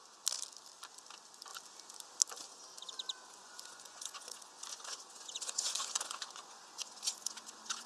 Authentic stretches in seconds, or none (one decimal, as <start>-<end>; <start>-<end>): 0.0-3.2